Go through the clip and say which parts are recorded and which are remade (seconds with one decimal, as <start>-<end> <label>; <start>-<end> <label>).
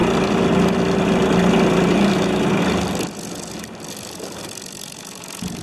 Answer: 0.0-5.6 recorded